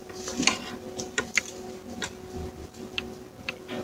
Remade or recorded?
recorded